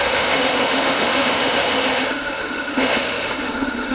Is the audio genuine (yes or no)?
no